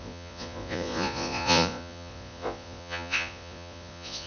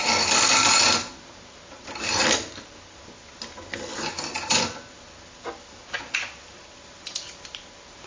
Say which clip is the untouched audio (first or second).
second